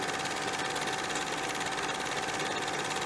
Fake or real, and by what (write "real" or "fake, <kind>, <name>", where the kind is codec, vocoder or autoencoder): real